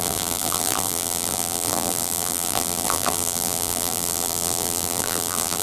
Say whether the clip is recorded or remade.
remade